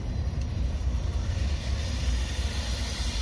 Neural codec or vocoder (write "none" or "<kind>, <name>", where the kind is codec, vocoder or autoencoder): vocoder, BigVGAN v2